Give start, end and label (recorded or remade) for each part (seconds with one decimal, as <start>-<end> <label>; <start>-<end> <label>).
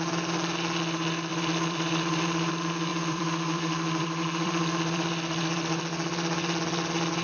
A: 0.0-1.3 recorded; 1.3-2.5 remade; 2.5-2.9 recorded; 2.9-5.8 remade; 5.8-7.2 recorded